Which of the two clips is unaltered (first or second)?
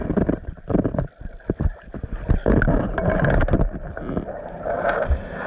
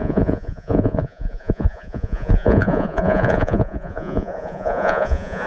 first